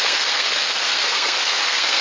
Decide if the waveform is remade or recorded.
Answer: remade